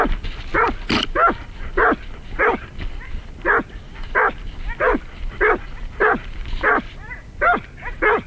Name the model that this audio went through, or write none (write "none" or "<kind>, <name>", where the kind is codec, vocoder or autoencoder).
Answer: none